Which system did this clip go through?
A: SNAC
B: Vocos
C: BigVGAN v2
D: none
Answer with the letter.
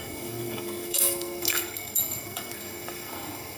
A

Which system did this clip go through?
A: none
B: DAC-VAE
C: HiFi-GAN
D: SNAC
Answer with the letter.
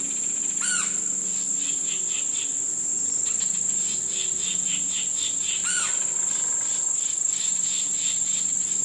A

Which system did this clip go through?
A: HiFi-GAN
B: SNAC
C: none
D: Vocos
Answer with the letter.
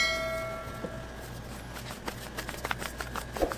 C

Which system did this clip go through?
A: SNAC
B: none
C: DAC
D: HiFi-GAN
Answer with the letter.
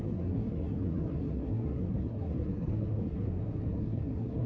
A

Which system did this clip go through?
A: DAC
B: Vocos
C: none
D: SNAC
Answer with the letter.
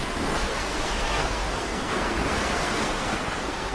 D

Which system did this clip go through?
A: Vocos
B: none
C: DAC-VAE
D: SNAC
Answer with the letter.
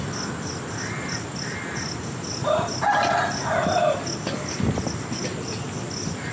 B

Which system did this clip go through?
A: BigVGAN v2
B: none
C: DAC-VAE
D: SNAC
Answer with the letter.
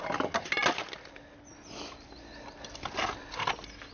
B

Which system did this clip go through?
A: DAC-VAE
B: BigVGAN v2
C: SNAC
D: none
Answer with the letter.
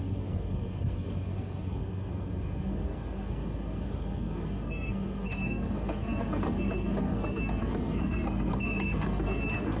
C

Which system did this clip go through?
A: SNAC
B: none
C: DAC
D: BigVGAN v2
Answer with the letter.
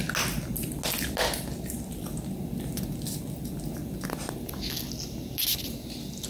B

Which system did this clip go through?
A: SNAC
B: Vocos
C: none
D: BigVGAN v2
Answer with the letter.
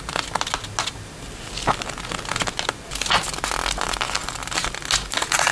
C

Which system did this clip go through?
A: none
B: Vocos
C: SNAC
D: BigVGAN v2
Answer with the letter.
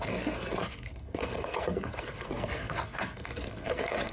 C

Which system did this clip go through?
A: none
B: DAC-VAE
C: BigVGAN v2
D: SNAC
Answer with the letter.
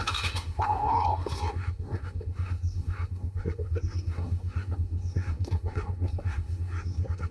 D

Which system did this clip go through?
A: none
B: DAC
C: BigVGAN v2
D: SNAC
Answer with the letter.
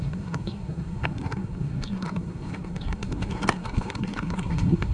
D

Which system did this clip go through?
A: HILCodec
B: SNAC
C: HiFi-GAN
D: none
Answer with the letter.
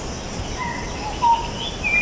D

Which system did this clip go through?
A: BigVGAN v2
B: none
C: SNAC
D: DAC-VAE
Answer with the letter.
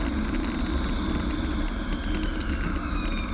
B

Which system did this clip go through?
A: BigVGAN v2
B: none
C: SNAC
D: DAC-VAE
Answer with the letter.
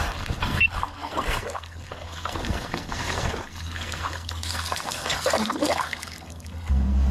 C